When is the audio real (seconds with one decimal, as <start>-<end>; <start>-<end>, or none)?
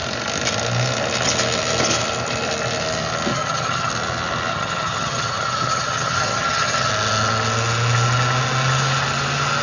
0.0-3.3; 3.9-4.5; 6.9-9.6